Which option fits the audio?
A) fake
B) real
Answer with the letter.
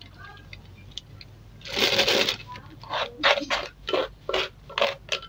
B